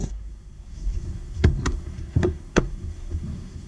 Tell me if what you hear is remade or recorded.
remade